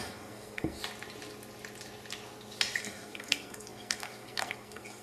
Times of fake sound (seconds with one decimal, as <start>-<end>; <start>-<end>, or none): 0.0-0.8; 2.8-5.0